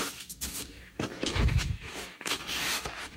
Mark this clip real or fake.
fake